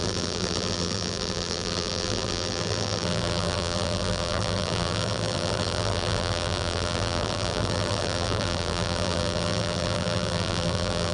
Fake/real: fake